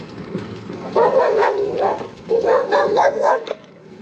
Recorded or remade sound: remade